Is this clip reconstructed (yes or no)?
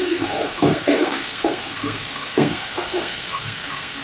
yes